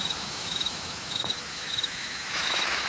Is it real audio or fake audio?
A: fake